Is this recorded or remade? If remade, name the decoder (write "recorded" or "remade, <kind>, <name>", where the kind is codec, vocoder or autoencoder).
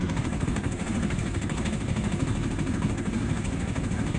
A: remade, codec, SNAC